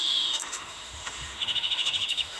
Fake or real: fake